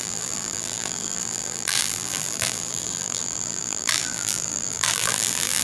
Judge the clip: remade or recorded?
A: remade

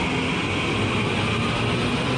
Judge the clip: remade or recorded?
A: recorded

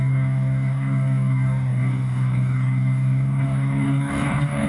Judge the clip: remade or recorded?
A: remade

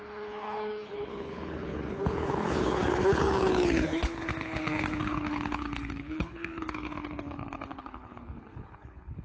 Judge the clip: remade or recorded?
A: remade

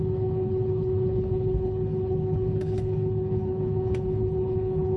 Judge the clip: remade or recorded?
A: remade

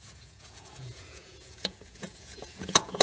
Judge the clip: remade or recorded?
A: remade